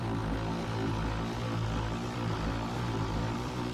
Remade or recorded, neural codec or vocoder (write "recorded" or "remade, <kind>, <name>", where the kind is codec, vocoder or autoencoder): recorded